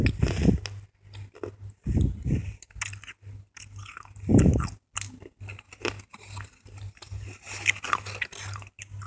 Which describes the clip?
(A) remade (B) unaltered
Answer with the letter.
B